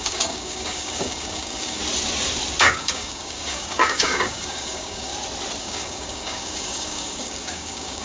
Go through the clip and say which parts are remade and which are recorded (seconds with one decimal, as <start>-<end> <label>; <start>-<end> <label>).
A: 0.0-1.8 remade; 1.8-2.6 recorded; 2.6-5.1 remade; 5.1-5.6 recorded; 5.6-8.0 remade